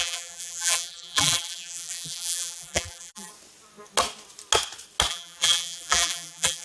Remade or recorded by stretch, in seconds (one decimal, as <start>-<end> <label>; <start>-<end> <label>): 0.0-3.3 remade; 3.3-5.1 recorded; 5.1-6.6 remade